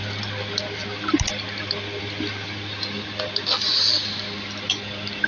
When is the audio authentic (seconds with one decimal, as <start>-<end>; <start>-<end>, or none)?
0.0-5.3